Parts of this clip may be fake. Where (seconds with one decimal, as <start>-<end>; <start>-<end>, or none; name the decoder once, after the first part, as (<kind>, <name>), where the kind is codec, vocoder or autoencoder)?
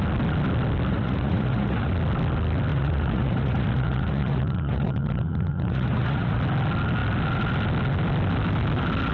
0.9-1.9 (vocoder, Vocos); 2.7-6.4